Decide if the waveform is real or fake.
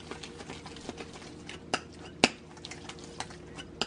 real